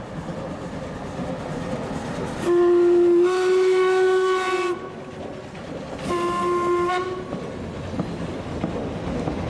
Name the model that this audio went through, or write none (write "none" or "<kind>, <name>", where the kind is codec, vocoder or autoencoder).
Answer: none